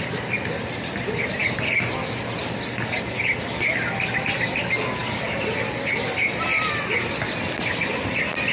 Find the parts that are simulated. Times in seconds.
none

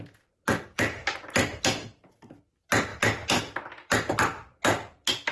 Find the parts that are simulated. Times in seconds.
0.7-2.4 (vocoder, BigVGAN v2)